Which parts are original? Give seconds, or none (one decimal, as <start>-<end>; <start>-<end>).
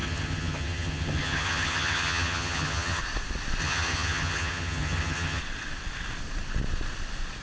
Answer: 3.0-3.6; 5.4-7.4